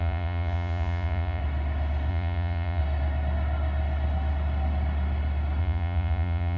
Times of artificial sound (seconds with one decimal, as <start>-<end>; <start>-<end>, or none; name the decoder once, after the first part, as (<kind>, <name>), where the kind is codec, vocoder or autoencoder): 0.0-1.4 (vocoder, Vocos); 2.1-2.8; 5.6-6.6